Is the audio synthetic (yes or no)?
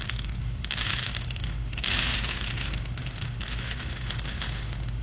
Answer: yes